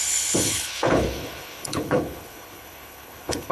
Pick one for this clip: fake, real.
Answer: fake